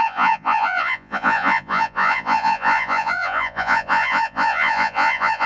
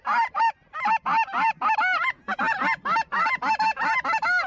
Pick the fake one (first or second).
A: first